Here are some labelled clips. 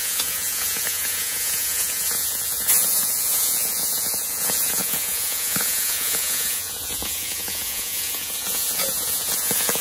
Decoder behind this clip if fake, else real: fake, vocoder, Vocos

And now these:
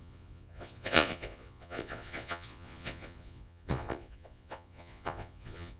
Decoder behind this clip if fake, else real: fake, vocoder, Vocos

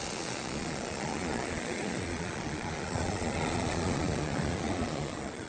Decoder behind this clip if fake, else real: fake, vocoder, Vocos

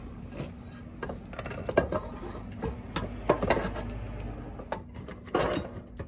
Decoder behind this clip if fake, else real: real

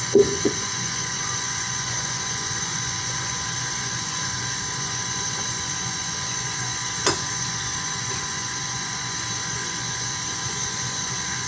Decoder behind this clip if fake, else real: fake, vocoder, Vocos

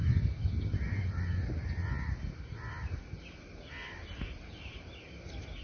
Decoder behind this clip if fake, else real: real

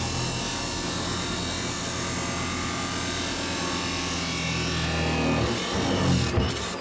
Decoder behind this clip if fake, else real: real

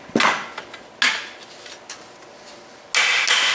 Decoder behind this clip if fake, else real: real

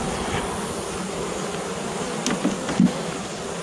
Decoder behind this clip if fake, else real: real